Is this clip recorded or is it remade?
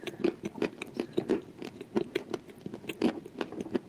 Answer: recorded